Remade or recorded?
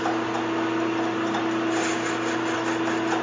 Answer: recorded